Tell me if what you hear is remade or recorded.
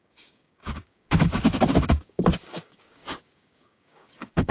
remade